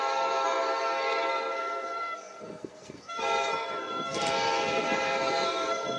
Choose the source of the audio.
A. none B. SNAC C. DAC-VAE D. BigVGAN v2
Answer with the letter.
B